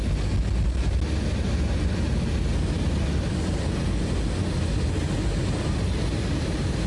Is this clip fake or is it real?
real